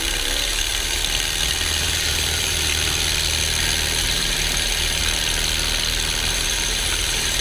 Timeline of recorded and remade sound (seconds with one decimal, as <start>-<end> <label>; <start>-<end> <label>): 0.0-1.0 remade; 1.0-1.8 recorded; 1.8-2.7 remade; 2.7-4.0 recorded; 4.0-5.0 remade; 5.0-6.3 recorded; 6.3-7.4 remade

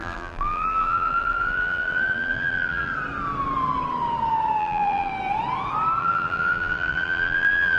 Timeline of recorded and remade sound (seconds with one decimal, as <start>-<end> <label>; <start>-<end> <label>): 0.0-2.9 remade; 2.9-4.6 recorded; 4.6-5.1 remade; 5.1-6.0 recorded; 6.0-7.8 remade

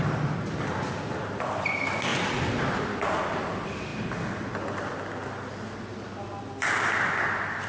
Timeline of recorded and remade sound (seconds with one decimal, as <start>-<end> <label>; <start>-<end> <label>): 0.0-2.1 recorded; 2.1-2.8 remade; 2.8-7.7 recorded

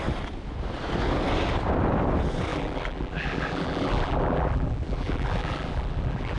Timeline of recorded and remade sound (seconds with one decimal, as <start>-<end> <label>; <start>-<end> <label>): 0.0-2.5 recorded; 2.5-6.4 remade

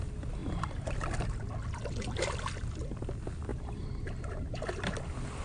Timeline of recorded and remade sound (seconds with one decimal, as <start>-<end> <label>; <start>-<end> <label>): 0.0-3.5 recorded; 3.5-4.6 remade; 4.6-5.4 recorded